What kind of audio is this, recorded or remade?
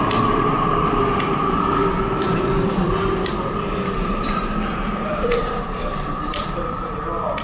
remade